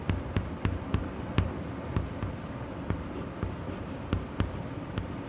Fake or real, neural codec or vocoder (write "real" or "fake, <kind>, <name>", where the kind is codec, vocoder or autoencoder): real